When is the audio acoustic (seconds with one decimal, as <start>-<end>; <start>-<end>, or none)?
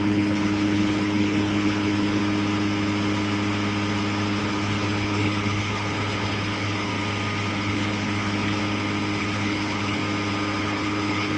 2.2-4.4; 6.9-7.5; 8.6-9.2; 10.0-10.6